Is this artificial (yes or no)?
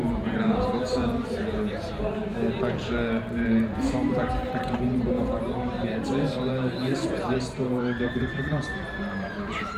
yes